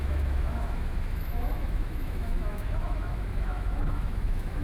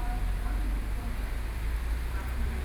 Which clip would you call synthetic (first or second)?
first